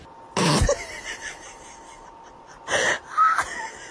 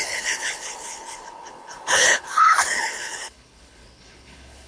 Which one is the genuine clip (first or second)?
first